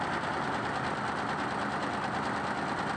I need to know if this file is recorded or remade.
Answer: remade